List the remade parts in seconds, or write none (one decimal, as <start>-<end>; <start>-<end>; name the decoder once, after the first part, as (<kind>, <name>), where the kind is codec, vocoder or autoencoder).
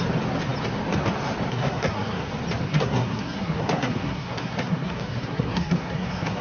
1.5-2.3 (codec, SNAC); 2.7-6.4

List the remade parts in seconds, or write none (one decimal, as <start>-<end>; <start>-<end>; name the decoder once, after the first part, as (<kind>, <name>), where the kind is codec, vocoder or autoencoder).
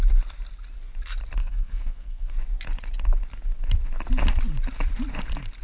1.4-2.3 (codec, SNAC)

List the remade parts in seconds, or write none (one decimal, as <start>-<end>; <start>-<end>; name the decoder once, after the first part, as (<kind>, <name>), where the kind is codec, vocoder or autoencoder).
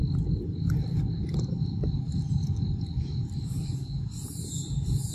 none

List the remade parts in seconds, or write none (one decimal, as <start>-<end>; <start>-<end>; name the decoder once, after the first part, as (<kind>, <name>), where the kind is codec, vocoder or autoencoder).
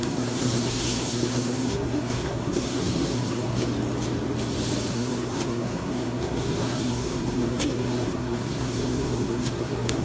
0.0-3.7 (codec, SNAC); 4.9-10.0